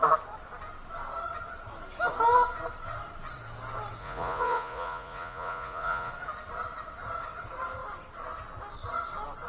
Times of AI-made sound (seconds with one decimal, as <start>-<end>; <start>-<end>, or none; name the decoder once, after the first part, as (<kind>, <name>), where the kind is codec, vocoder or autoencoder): 4.0-6.1 (vocoder, Vocos)